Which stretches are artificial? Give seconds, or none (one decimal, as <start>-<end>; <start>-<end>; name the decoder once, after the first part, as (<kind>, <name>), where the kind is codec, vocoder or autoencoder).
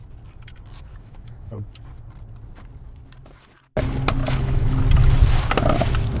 0.9-1.7 (autoencoder, DAC-VAE); 4.2-4.7